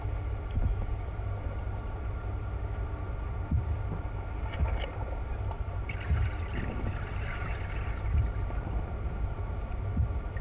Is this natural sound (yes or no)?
yes